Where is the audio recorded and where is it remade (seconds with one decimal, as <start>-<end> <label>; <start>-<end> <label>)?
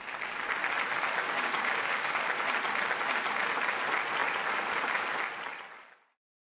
0.0-1.2 recorded; 1.2-2.1 remade; 2.1-6.4 recorded